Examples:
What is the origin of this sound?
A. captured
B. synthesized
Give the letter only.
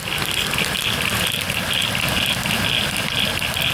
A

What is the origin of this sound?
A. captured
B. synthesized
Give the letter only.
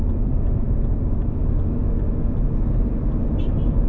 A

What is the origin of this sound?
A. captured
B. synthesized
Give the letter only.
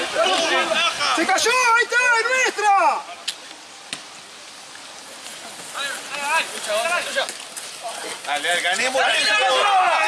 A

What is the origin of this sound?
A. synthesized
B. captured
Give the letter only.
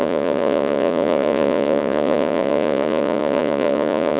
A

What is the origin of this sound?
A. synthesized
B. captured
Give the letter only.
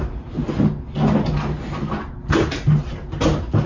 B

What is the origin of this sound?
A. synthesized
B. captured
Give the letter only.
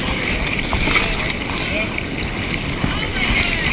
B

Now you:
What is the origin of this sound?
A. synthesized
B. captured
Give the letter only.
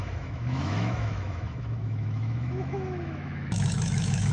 A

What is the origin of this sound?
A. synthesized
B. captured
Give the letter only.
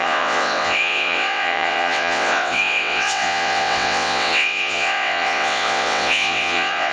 A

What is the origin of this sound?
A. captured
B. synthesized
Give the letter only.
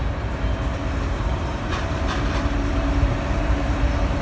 B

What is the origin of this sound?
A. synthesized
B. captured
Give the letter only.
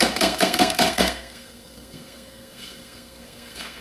A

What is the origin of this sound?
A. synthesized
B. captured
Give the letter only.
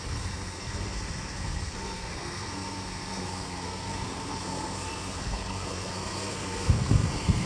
A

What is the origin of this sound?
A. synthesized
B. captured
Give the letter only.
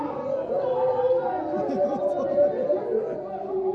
B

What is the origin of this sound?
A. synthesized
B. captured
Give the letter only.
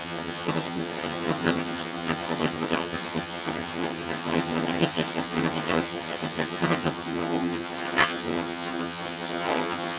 A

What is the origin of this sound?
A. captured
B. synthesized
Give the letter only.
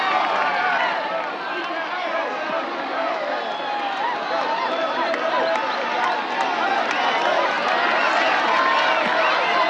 A